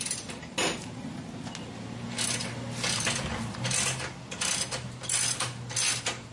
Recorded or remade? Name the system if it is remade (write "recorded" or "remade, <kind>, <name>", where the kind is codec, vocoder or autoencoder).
recorded